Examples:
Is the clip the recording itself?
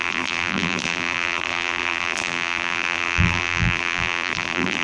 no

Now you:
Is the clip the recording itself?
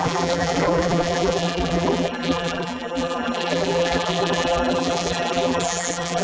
no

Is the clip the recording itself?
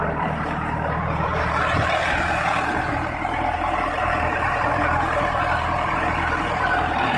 no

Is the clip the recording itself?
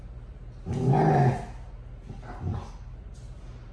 yes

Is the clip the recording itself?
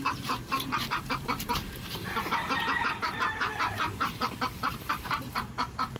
no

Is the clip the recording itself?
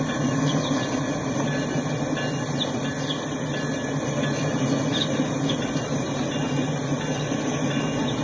yes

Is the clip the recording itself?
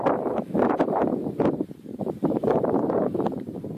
no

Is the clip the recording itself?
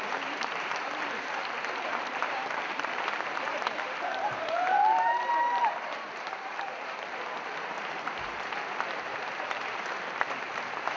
no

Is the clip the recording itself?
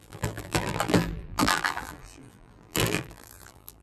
no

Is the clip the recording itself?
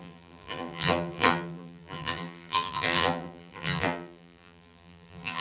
no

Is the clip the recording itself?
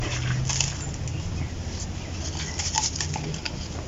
yes